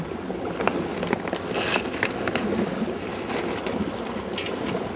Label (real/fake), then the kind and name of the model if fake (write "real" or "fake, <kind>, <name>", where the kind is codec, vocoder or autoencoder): real